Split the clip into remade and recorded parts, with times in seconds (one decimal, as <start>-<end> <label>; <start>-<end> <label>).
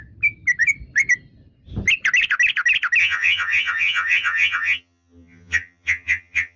0.0-3.0 recorded; 3.0-6.6 remade